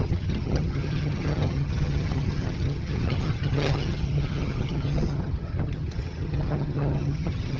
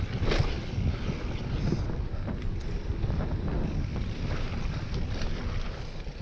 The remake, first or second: first